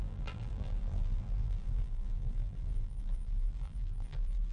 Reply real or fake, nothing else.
fake